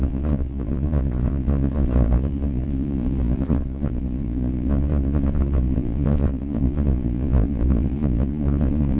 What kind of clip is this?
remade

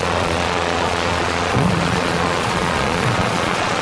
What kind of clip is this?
remade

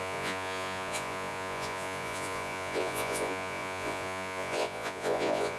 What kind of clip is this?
remade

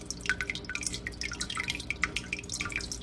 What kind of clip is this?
recorded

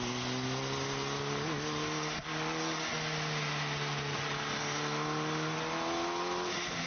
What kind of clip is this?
recorded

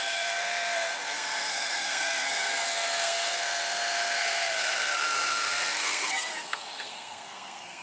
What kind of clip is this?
remade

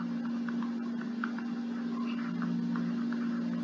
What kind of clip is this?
recorded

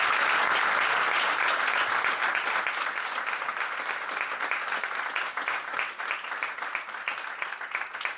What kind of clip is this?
recorded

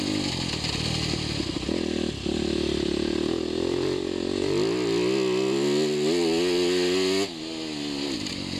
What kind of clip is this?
recorded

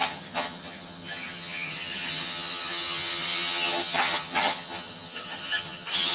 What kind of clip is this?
remade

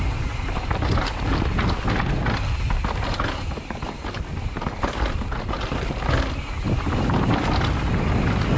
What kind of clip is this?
recorded